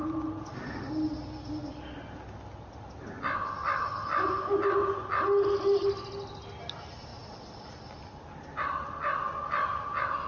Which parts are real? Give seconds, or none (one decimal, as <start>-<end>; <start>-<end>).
0.0-10.3